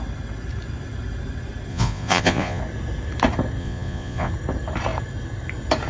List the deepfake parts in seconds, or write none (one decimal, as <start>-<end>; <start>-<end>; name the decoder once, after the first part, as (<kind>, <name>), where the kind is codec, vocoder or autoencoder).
1.7-2.6 (vocoder, Vocos); 3.6-4.3